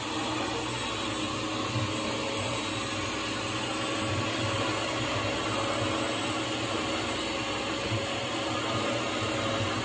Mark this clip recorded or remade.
recorded